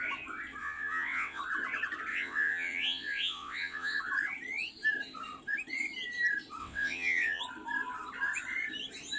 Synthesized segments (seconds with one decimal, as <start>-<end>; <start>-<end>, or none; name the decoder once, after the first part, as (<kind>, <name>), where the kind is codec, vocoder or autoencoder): 0.6-1.4 (vocoder, WaveNeXt); 2.1-4.0; 6.6-7.4